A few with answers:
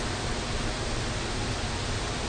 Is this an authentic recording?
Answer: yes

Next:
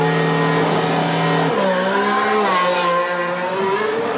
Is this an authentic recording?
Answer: yes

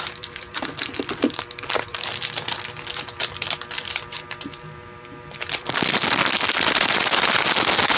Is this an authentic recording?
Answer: no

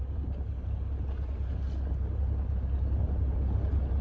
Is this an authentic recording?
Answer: yes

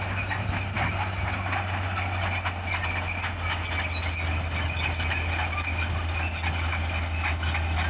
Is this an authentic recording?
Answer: yes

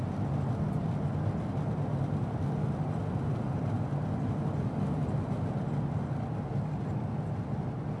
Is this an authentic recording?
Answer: yes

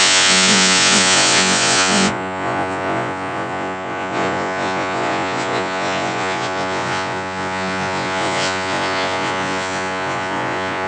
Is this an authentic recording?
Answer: no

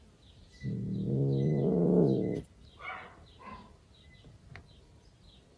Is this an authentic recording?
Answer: yes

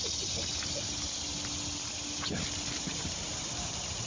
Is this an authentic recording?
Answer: yes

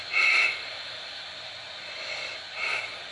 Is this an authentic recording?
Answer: yes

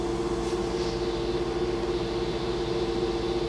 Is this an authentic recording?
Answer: yes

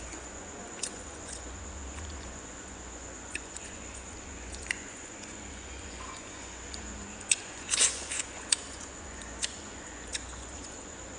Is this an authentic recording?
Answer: no